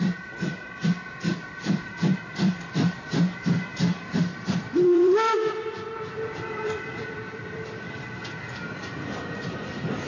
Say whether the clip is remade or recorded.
remade